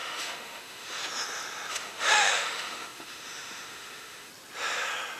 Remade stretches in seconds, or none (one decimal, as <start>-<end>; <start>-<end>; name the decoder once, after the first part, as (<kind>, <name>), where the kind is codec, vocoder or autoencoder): 0.0-1.0 (autoencoder, DAC-VAE); 1.7-4.3